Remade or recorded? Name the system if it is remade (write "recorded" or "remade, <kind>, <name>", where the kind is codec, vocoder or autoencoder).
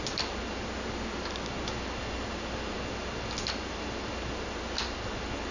recorded